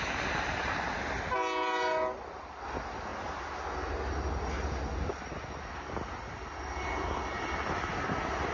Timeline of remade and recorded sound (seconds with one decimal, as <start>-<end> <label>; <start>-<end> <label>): 0.0-8.5 recorded